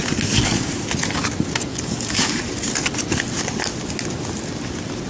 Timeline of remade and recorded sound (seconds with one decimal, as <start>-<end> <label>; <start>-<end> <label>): 0.0-1.7 recorded; 1.7-2.4 remade; 2.4-5.1 recorded